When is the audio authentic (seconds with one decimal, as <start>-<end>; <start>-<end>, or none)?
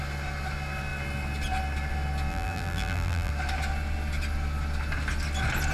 0.0-2.3; 3.3-5.7